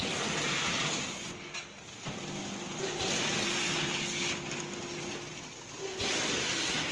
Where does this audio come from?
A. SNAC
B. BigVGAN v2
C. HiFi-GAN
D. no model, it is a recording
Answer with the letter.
D